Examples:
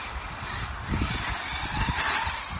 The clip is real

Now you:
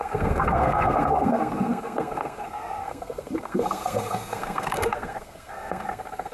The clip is fake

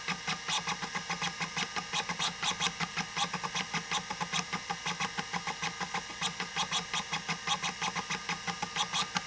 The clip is real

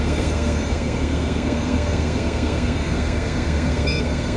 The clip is fake